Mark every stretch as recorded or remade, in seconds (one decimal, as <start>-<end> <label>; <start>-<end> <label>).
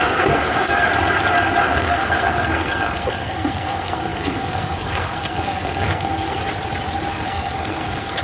0.0-0.9 remade; 0.9-1.6 recorded; 1.6-6.4 remade; 6.4-7.1 recorded; 7.1-8.2 remade